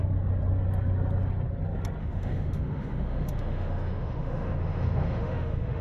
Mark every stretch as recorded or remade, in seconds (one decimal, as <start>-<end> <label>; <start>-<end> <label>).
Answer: 0.0-2.0 recorded; 2.0-5.8 remade